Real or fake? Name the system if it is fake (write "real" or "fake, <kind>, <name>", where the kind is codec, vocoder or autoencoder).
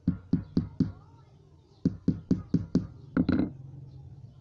real